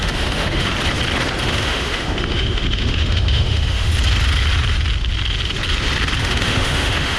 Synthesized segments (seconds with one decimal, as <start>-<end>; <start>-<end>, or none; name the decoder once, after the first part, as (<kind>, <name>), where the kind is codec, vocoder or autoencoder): 0.0-0.7 (autoencoder, DAC-VAE); 1.4-3.9; 6.2-7.2